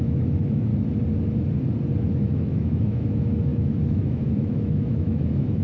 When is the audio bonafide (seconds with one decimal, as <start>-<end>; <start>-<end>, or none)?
0.7-2.0